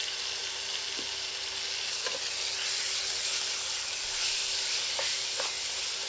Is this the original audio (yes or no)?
yes